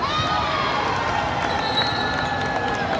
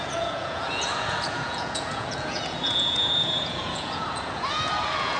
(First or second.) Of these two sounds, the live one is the first